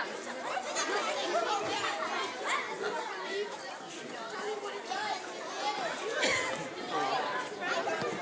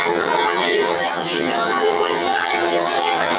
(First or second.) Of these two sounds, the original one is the first